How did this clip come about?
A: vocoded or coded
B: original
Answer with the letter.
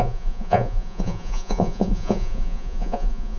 A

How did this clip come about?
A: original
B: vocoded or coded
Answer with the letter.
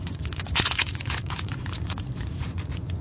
B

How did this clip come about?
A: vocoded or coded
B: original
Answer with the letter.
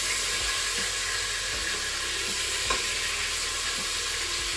B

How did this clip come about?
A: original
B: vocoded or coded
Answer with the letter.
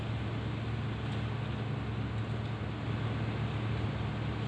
A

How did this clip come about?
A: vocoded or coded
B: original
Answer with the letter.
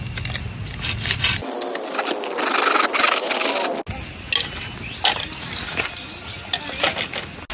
B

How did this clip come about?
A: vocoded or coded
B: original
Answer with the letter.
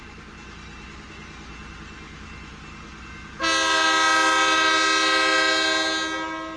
B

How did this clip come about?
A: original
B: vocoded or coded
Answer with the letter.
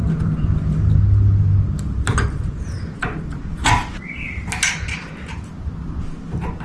A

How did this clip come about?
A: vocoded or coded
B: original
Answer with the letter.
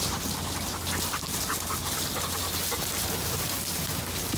B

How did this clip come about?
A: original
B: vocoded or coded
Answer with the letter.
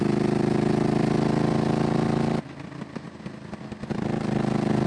A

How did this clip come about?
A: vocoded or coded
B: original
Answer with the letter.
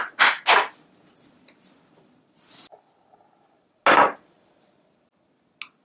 B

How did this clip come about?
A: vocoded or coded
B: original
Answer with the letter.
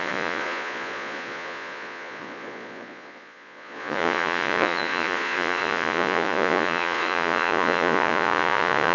A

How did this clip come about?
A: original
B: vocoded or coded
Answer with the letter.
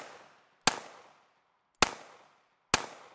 A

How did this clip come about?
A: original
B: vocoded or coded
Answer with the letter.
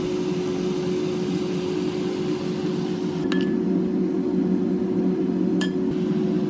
A